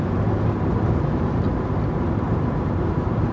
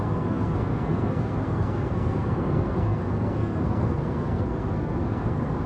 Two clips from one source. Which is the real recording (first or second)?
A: first